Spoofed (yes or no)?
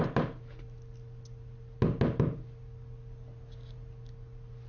no